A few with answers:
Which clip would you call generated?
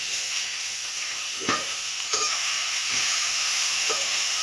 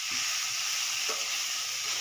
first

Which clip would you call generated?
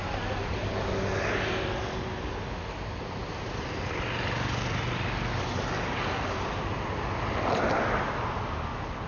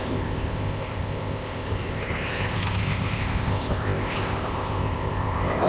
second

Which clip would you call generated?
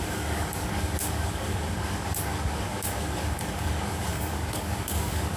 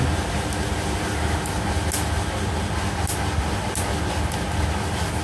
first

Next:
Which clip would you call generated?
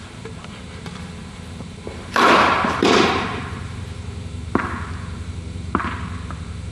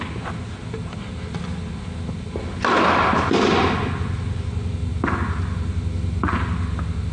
first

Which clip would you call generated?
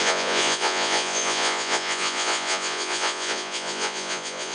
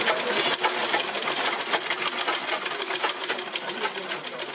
first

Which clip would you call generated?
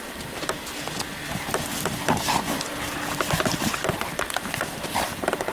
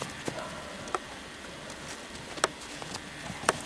first